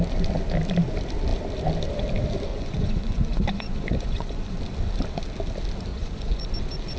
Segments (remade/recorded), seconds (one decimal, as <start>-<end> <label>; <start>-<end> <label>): 0.0-2.5 recorded; 2.5-4.6 remade; 4.6-5.9 recorded; 5.9-6.5 remade; 6.5-7.0 recorded